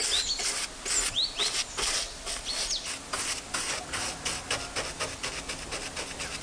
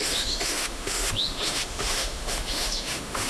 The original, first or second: first